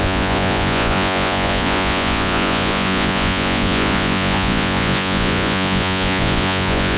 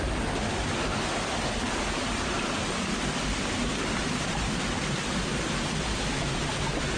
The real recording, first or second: second